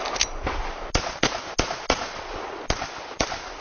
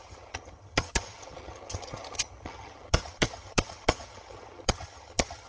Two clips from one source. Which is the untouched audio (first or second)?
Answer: first